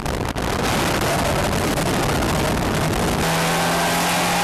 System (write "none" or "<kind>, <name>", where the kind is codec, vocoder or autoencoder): none